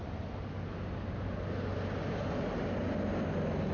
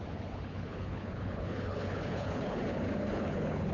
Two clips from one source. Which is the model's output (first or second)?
second